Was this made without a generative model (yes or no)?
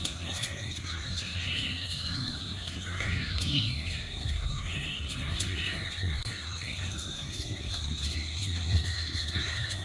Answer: no